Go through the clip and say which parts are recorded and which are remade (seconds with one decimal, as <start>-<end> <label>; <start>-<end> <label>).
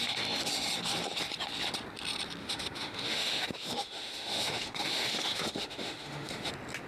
0.0-2.4 recorded; 2.4-6.5 remade; 6.5-6.9 recorded